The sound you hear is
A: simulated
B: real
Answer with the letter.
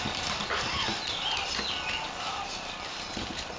B